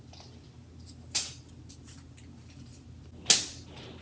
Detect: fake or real real